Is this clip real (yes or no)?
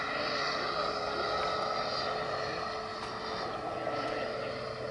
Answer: yes